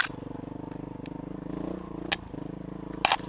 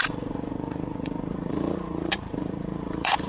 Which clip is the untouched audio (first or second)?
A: first